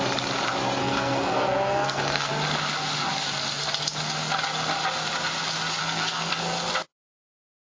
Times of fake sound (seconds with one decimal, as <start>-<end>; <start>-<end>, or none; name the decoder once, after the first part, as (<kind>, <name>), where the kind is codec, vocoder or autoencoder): 0.8-2.3 (codec, SNAC); 5.8-6.3